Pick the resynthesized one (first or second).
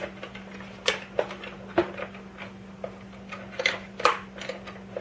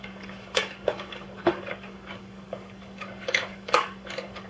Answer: second